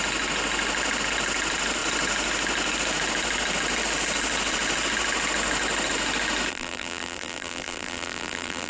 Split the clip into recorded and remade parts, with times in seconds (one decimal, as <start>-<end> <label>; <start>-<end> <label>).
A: 0.0-6.5 recorded; 6.5-8.7 remade